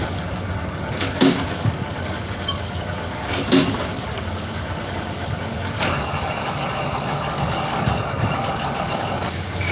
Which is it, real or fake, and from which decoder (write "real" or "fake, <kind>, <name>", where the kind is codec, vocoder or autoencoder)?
fake, codec, DAC